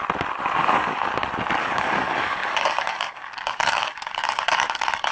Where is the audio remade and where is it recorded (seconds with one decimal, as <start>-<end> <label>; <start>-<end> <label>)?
0.0-0.6 recorded; 0.6-1.1 remade; 1.1-1.6 recorded; 1.6-5.1 remade